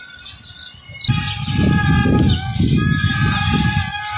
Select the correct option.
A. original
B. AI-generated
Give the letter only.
A